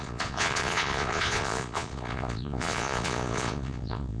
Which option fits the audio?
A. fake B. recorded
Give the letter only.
A